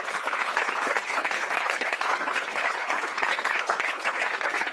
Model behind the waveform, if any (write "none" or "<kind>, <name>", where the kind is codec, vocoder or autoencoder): codec, HILCodec